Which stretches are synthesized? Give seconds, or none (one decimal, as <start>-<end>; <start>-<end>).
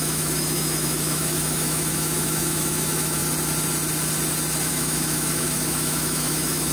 0.0-3.2; 4.7-6.7